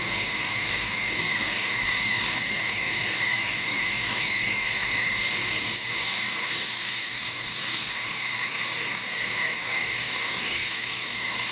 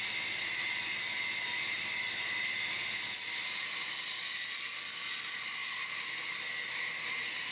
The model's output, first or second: first